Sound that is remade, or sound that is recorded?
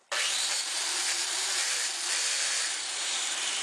remade